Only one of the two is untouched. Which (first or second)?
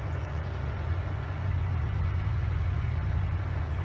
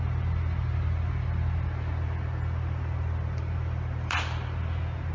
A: second